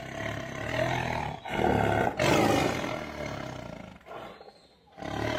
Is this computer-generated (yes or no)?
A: no